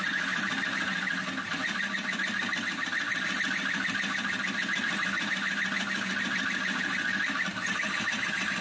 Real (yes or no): yes